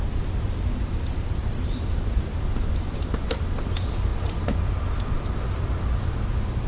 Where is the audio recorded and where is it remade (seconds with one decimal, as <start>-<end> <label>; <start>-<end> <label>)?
0.0-1.4 recorded; 1.4-3.5 remade; 3.5-6.7 recorded